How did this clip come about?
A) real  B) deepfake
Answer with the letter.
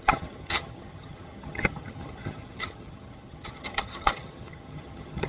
B